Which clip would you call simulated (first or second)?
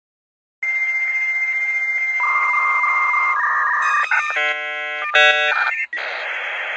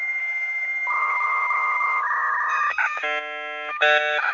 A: second